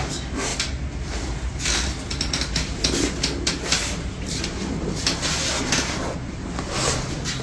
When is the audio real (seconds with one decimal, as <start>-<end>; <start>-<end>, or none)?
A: 0.0-7.4